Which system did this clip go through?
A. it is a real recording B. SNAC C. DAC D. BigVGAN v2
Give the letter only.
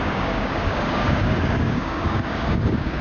C